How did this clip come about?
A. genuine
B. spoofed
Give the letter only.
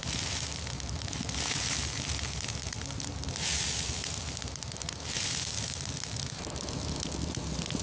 A